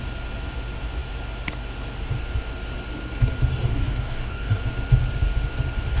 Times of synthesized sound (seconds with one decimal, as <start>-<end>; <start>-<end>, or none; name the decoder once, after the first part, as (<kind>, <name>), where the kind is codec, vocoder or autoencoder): 3.5-4.6 (codec, DAC)